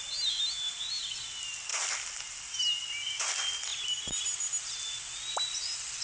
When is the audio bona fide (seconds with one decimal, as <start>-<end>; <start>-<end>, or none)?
0.0-6.0